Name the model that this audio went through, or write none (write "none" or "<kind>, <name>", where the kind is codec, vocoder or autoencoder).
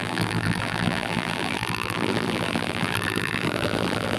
vocoder, BigVGAN v2